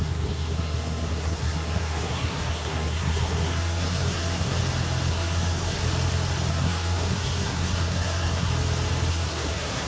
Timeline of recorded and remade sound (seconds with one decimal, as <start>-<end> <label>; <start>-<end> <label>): 0.0-4.6 remade; 4.6-5.1 recorded; 5.1-5.8 remade; 5.8-6.5 recorded; 6.5-8.5 remade; 8.5-9.1 recorded; 9.1-9.9 remade